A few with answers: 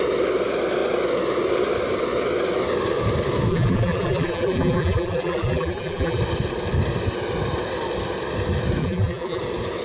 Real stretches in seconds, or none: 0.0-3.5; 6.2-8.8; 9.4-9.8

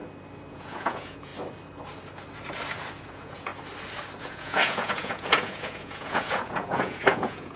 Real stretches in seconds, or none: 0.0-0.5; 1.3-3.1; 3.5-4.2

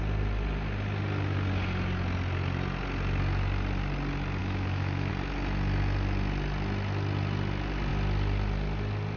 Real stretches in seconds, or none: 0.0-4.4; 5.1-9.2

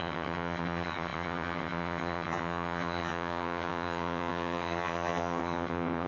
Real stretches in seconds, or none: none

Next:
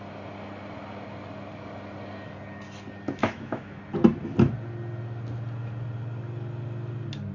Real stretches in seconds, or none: 0.0-3.2; 3.8-7.3